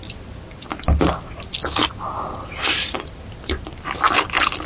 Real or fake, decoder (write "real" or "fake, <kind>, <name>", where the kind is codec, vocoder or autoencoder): real